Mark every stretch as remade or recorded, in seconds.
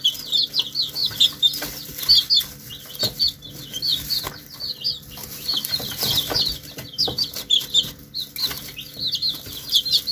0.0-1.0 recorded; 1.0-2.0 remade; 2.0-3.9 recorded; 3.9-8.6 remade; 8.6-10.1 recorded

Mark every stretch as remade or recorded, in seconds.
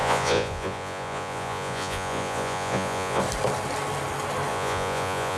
0.0-3.2 remade; 3.2-4.5 recorded; 4.5-5.4 remade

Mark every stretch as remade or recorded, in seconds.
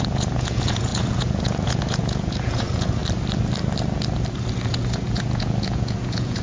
0.0-3.0 remade; 3.0-4.7 recorded; 4.7-6.4 remade